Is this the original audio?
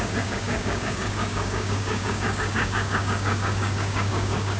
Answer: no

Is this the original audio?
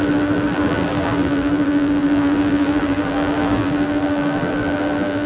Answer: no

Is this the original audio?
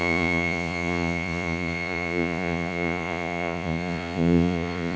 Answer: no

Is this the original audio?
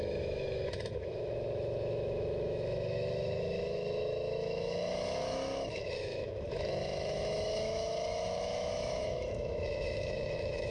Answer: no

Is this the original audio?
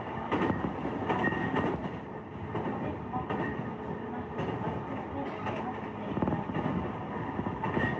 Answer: yes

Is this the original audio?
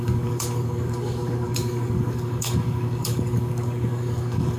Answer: no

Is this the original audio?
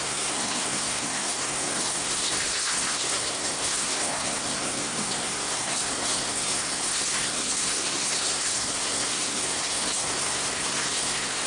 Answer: no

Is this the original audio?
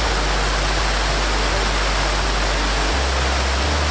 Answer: yes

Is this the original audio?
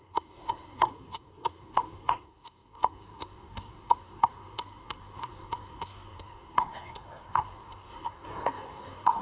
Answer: no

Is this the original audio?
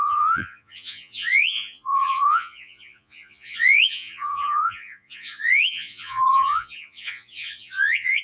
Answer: no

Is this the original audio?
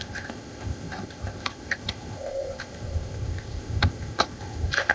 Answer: no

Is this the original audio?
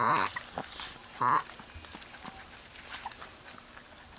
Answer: yes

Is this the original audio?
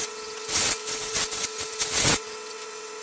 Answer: no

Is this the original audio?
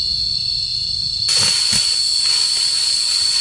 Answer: yes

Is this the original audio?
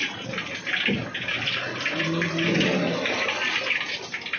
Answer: yes